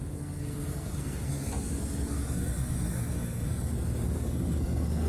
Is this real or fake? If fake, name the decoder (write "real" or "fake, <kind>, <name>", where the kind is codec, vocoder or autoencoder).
fake, codec, SNAC